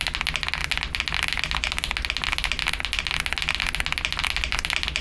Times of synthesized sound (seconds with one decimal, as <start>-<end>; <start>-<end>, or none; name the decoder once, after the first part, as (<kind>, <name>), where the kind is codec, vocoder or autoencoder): none